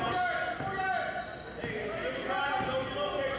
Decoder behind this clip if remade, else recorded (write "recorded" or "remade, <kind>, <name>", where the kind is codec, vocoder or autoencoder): recorded